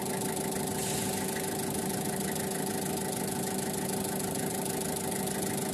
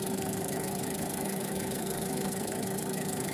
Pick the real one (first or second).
first